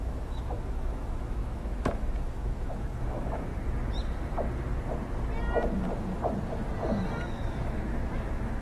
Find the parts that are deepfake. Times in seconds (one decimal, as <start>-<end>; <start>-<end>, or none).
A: 0.0-3.5; 7.3-8.6